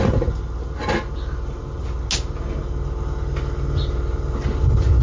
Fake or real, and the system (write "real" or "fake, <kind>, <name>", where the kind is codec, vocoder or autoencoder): real